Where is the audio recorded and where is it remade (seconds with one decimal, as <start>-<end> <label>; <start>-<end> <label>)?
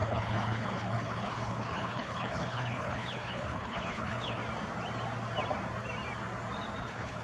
0.0-4.4 remade; 4.4-6.8 recorded; 6.8-7.2 remade